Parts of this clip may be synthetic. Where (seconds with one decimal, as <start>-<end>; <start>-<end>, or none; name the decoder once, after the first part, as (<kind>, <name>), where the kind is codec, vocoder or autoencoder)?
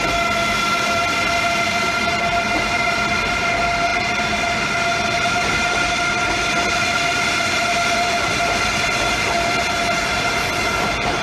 none